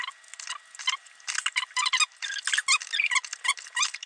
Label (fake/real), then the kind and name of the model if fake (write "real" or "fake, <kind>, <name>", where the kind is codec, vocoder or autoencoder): real